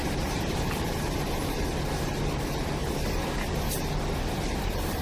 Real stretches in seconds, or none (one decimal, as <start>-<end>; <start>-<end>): 1.2-5.0